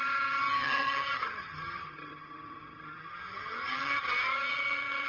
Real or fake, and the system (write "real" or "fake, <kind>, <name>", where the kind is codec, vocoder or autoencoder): fake, vocoder, HiFi-GAN